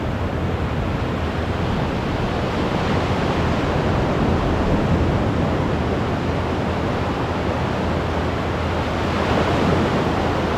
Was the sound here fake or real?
real